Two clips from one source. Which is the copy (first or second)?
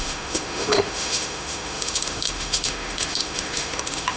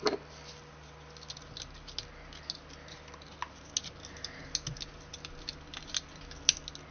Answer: first